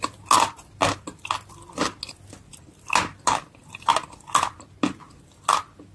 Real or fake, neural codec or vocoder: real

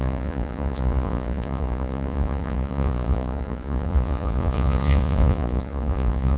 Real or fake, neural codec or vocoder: fake, vocoder, Vocos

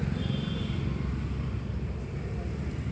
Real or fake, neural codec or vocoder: real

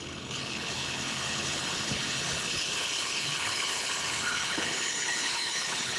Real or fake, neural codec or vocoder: fake, codec, HILCodec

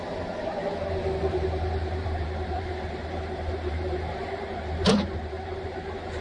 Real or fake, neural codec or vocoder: fake, vocoder, BigVGAN v2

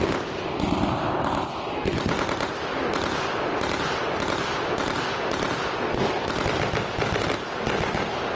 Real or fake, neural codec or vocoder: real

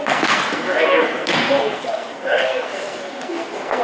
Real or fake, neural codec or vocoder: fake, codec, SNAC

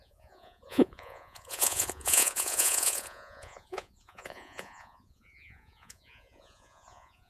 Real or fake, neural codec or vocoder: fake, vocoder, Vocos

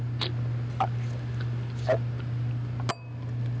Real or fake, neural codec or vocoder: real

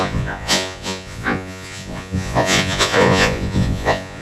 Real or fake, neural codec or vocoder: fake, vocoder, Vocos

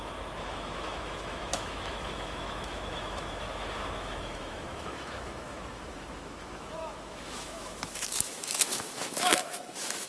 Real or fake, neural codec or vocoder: fake, autoencoder, DAC-VAE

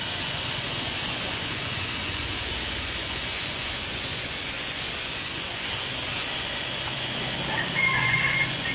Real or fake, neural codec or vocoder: fake, vocoder, Vocos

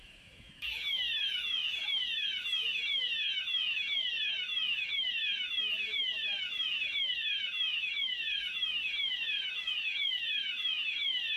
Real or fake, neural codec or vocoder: fake, autoencoder, DAC-VAE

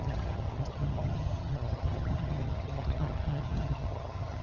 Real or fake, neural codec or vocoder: fake, vocoder, HiFi-GAN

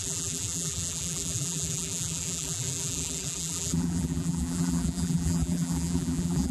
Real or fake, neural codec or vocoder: fake, vocoder, BigVGAN v2